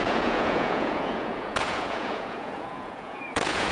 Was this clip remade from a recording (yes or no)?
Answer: yes